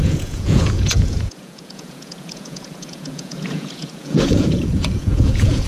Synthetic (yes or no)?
yes